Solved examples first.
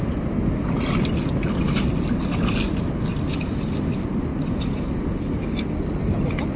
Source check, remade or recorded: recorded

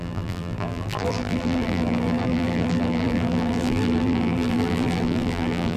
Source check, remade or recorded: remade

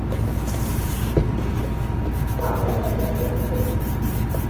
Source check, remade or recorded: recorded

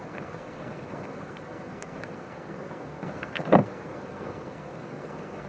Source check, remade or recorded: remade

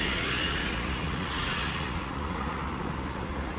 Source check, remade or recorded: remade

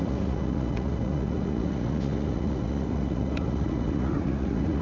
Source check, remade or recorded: remade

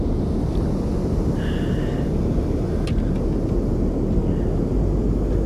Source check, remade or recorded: recorded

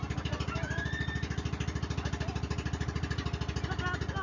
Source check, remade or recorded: recorded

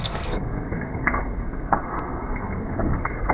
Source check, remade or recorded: remade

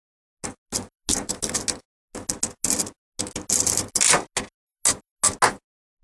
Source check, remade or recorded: recorded